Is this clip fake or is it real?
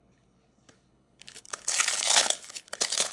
fake